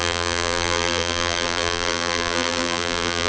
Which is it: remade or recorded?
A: remade